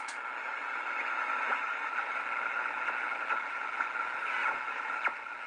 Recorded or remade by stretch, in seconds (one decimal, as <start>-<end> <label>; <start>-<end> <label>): 0.0-1.5 recorded; 1.5-2.1 remade; 2.1-5.5 recorded